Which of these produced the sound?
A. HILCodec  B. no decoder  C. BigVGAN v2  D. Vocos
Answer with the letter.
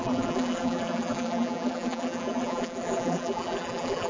C